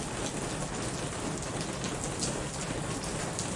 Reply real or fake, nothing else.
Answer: real